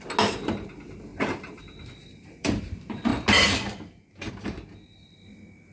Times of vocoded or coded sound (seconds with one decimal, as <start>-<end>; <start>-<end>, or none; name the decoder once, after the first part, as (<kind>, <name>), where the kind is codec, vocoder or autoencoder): 1.1-1.6 (vocoder, BigVGAN v2); 2.0-2.7

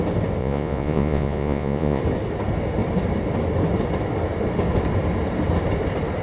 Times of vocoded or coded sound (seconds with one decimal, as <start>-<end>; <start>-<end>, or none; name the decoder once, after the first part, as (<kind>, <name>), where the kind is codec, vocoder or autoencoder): 0.4-2.0 (vocoder, Vocos)

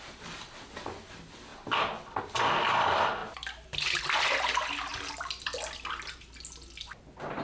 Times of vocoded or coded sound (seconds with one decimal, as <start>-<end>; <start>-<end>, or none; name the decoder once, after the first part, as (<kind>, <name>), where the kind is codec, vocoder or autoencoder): none

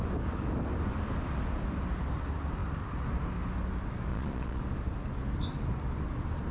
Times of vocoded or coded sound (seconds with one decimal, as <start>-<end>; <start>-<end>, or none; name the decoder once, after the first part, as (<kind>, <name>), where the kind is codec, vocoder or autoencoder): 4.1-4.6 (vocoder, Vocos)

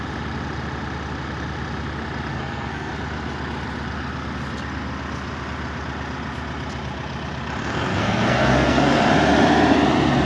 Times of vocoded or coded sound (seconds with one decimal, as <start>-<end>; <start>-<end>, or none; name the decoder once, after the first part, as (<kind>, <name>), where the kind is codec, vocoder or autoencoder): 2.3-2.9 (codec, SNAC); 7.6-9.1

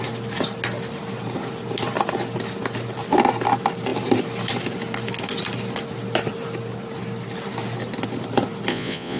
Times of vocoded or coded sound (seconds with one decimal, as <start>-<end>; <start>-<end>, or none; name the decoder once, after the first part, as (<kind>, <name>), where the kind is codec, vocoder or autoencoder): 8.7-9.2 (vocoder, Vocos)

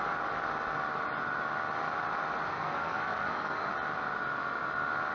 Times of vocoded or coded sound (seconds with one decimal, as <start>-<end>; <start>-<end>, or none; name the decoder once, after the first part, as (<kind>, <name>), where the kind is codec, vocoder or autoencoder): 2.5-3.7 (codec, SNAC)